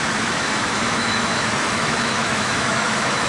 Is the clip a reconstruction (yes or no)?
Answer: yes